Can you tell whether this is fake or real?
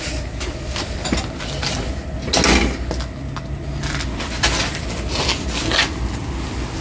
real